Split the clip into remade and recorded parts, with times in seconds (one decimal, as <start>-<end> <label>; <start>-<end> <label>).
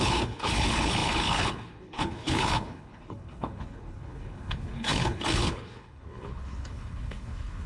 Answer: 0.0-7.7 remade